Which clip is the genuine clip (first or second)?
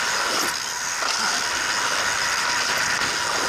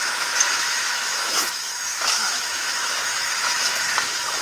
first